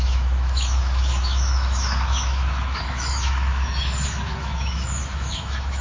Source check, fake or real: fake